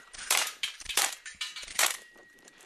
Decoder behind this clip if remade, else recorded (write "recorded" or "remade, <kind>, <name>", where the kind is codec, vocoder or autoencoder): remade, vocoder, BigVGAN v2